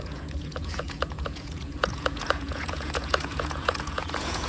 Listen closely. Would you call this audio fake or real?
fake